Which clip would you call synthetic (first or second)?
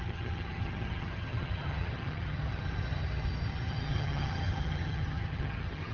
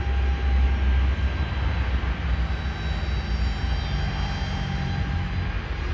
first